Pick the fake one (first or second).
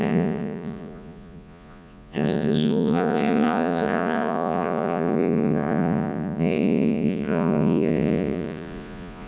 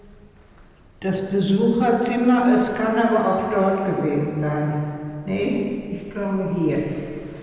first